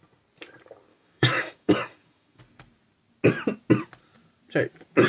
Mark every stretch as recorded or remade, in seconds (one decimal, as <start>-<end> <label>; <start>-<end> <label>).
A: 0.0-0.9 recorded; 0.9-2.4 remade; 2.4-5.1 recorded